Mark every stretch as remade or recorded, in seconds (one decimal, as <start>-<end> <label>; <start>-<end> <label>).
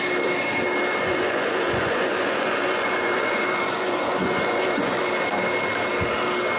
0.0-1.0 recorded; 1.0-5.0 remade; 5.0-6.6 recorded